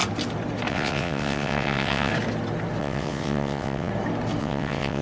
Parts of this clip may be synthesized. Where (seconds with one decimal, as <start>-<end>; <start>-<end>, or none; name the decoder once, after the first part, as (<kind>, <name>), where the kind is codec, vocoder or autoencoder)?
0.7-2.1 (vocoder, WaveNeXt); 2.8-3.9; 4.4-5.0

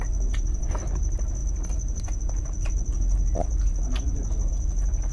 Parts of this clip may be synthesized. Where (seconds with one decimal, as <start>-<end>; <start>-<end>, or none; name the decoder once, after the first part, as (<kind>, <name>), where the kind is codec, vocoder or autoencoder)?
none

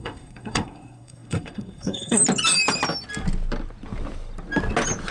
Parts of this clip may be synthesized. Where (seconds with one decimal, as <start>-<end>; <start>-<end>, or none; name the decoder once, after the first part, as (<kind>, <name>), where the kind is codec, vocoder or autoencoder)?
0.0-2.2 (codec, SNAC)

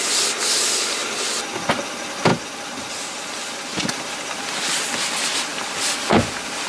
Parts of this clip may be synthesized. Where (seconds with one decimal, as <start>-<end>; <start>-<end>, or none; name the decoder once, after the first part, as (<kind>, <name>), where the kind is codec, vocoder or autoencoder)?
none